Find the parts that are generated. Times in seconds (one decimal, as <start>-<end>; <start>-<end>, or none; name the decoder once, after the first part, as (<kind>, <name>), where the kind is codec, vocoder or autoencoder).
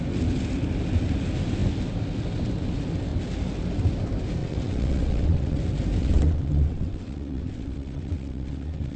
4.4-5.6 (vocoder, WaveNeXt); 6.0-9.0